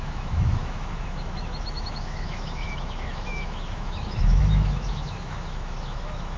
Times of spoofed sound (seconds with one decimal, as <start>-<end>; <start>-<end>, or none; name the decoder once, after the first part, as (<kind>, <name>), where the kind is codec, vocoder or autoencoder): 0.0-6.4 (autoencoder, DAC-VAE)